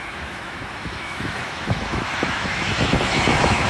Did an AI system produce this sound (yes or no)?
yes